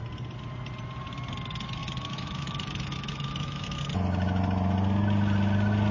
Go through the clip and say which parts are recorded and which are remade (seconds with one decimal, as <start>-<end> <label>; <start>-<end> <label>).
0.0-1.8 recorded; 1.8-3.8 remade; 3.8-5.9 recorded